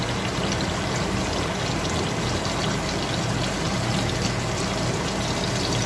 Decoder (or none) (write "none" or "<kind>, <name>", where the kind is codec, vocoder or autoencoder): none